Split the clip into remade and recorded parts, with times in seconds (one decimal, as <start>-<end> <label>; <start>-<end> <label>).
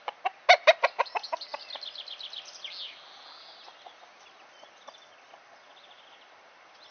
0.0-6.9 recorded